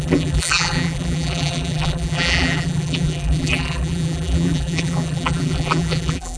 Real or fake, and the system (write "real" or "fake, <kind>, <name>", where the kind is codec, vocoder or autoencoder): fake, vocoder, BigVGAN v2